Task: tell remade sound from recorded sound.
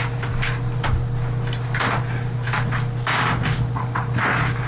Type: recorded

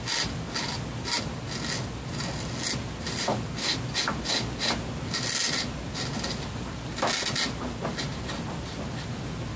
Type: recorded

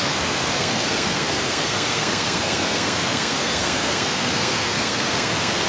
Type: remade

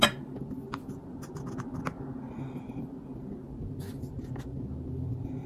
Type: recorded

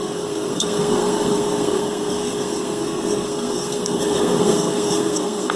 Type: remade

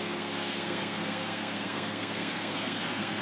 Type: remade